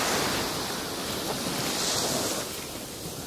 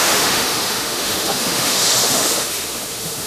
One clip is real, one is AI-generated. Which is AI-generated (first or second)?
second